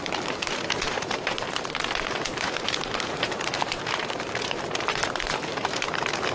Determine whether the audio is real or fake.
fake